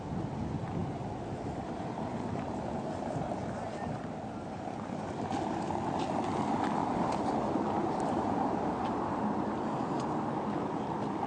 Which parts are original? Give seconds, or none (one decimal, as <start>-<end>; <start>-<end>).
0.0-0.8; 5.5-6.8; 7.3-7.8; 9.6-11.3